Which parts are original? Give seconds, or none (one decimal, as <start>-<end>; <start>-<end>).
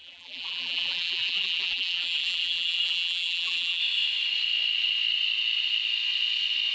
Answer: 3.8-6.7